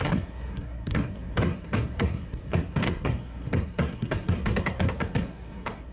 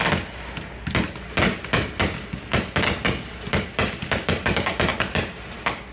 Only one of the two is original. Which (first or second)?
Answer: second